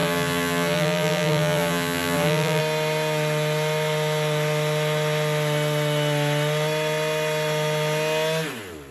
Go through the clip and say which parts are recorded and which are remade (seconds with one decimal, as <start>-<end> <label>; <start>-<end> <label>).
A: 0.0-2.6 remade; 2.6-8.9 recorded